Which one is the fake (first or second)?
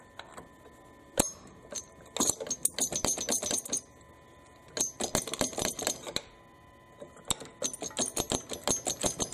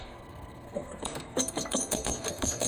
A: second